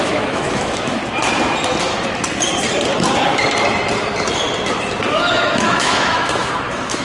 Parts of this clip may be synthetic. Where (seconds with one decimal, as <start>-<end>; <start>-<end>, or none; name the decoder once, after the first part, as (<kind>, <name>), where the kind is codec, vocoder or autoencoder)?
0.0-1.0 (autoencoder, DAC-VAE); 5.2-7.0